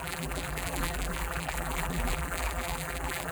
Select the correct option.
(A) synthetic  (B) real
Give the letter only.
A